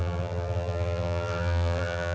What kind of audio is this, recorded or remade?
remade